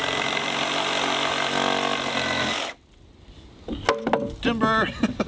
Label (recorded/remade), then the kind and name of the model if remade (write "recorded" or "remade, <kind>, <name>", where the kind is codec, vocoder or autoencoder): recorded